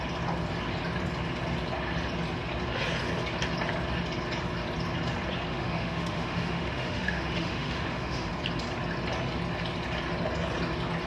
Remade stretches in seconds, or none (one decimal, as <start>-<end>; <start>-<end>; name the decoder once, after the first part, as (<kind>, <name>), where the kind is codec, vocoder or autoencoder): 5.5-8.3 (autoencoder, DAC-VAE)